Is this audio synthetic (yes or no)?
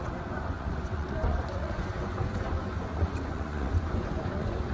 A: yes